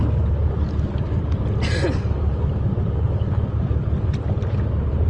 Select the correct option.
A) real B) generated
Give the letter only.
A